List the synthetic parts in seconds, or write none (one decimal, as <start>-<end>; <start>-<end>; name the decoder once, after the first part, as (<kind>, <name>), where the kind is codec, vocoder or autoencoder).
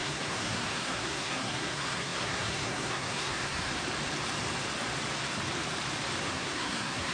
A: 0.0-3.7 (codec, SNAC); 6.2-7.1